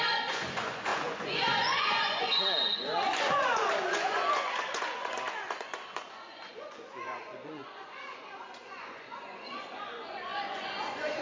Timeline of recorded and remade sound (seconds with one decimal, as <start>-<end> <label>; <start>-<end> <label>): 0.0-11.2 remade

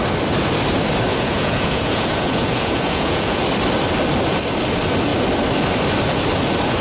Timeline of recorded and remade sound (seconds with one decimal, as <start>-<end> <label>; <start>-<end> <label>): 0.0-1.1 recorded; 1.1-3.4 remade; 3.4-6.8 recorded

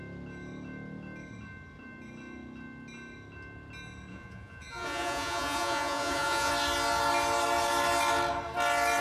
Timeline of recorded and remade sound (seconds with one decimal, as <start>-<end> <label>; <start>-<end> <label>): 0.0-4.1 recorded; 4.1-6.5 remade; 6.5-9.0 recorded